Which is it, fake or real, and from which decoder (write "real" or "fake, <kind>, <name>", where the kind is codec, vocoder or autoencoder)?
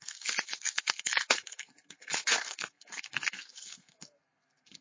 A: fake, codec, SNAC